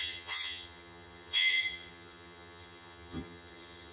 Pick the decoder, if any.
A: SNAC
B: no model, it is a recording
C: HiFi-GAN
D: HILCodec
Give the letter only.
C